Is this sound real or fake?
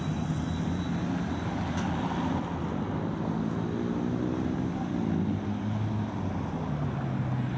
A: real